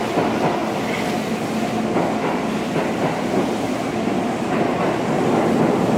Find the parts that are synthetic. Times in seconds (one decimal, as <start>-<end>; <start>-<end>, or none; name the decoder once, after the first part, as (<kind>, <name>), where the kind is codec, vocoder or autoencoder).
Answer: none